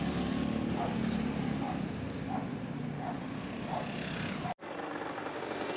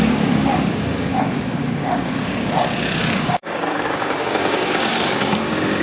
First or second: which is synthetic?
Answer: second